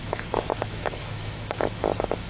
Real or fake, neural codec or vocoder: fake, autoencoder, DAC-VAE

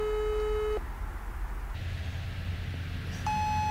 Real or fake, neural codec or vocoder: real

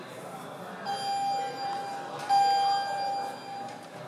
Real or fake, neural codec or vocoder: real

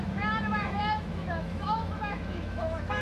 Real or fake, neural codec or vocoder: fake, autoencoder, DAC-VAE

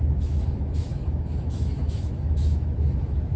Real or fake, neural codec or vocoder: fake, autoencoder, DAC-VAE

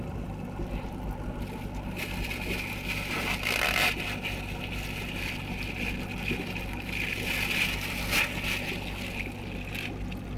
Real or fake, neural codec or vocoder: real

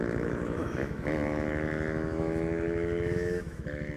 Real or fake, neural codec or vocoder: fake, autoencoder, DAC-VAE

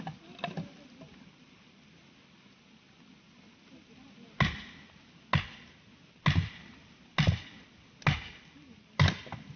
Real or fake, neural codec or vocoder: real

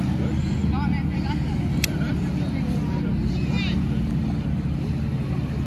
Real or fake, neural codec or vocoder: real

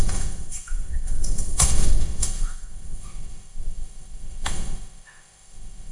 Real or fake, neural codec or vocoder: fake, autoencoder, DAC-VAE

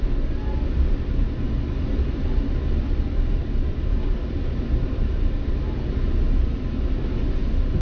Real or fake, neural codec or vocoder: real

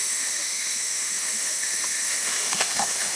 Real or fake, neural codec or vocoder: fake, autoencoder, DAC-VAE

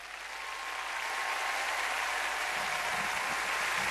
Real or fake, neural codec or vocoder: real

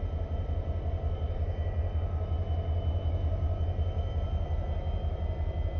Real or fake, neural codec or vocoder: real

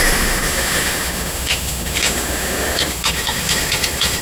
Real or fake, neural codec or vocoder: fake, autoencoder, DAC-VAE